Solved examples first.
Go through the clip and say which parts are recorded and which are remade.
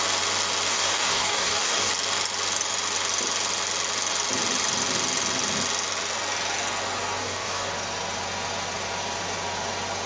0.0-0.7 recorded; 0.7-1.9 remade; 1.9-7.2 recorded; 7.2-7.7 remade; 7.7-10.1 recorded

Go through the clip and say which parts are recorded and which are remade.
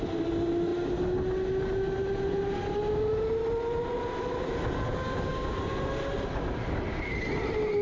0.0-4.9 recorded; 4.9-5.6 remade; 5.6-7.8 recorded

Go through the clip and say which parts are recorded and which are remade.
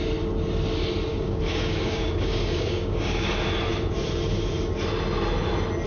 0.0-1.1 recorded; 1.1-3.3 remade; 3.3-5.9 recorded